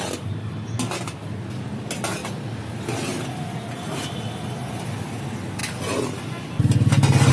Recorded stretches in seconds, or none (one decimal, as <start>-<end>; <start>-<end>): 0.0-7.3